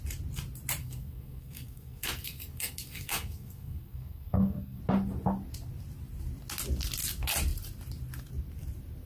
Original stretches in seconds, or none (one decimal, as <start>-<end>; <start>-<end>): 0.0-0.8; 4.8-9.1